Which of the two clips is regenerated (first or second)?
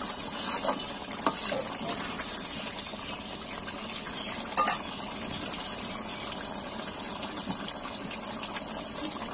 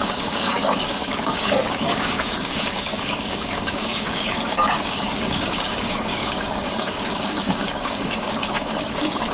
second